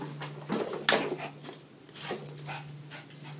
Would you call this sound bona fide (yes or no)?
yes